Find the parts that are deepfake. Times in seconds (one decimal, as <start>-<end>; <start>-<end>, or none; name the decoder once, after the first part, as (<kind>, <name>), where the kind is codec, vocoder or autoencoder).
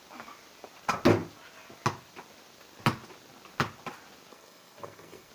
4.3-5.3 (codec, SNAC)